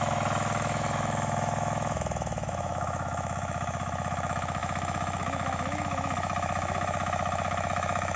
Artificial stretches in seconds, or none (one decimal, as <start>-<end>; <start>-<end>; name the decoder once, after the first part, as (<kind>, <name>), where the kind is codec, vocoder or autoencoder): 0.0-8.2 (autoencoder, DAC-VAE)